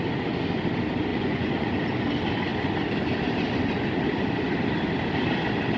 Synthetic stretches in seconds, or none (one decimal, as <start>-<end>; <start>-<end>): 1.1-1.7